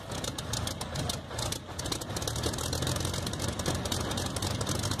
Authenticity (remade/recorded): recorded